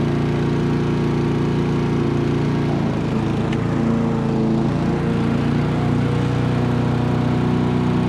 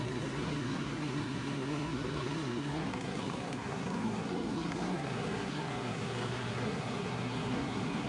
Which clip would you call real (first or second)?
first